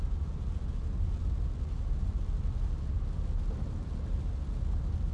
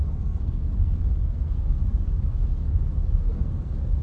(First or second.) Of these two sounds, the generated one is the second